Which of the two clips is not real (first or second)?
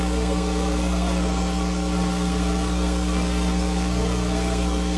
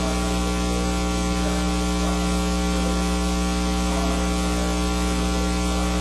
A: first